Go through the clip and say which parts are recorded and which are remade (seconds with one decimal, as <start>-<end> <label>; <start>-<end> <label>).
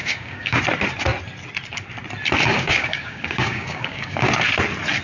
0.0-0.6 remade; 0.6-2.5 recorded; 2.5-4.3 remade; 4.3-5.0 recorded